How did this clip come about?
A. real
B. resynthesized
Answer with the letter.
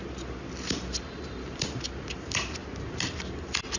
A